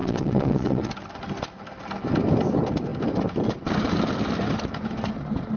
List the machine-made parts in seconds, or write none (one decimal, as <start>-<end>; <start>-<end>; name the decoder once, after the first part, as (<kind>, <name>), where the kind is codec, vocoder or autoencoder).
0.0-0.9 (vocoder, WaveNeXt)